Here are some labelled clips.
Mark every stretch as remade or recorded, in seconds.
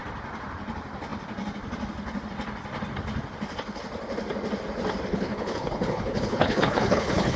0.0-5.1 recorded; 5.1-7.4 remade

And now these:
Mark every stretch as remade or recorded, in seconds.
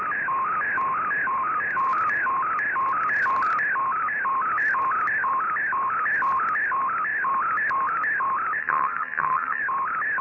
0.0-8.6 recorded; 8.6-9.6 remade; 9.6-10.2 recorded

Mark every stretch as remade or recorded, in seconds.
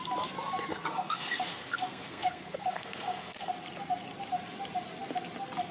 0.0-0.7 recorded; 0.7-3.5 remade; 3.5-5.7 recorded